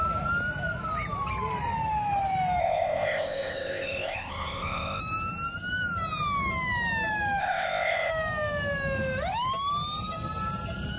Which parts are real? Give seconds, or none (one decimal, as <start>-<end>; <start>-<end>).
0.0-2.6; 5.0-7.4; 8.1-11.0